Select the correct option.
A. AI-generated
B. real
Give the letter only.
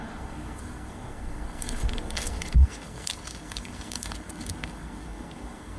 A